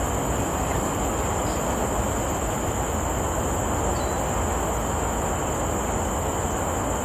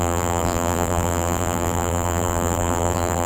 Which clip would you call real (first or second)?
first